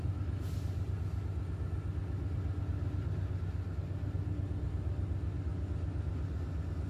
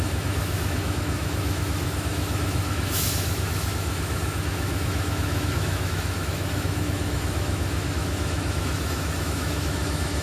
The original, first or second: first